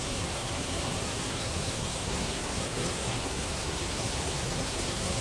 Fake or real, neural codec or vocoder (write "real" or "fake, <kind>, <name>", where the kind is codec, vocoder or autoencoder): fake, codec, SNAC